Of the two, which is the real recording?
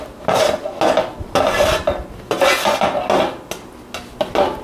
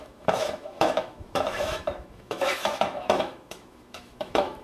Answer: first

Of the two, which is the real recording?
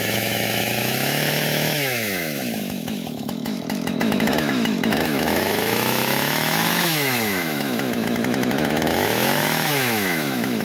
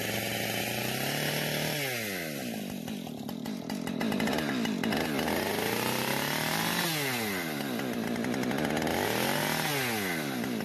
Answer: second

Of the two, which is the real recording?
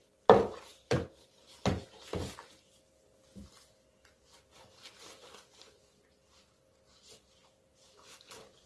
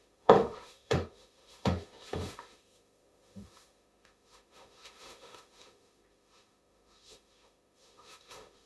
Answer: first